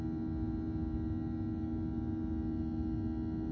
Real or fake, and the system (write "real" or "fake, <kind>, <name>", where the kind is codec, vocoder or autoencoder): real